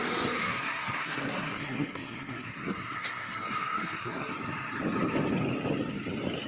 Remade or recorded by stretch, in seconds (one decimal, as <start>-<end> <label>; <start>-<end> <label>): 0.0-0.4 recorded; 0.4-4.3 remade; 4.3-6.5 recorded